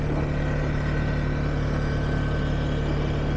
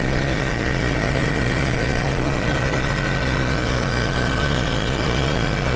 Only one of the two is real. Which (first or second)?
first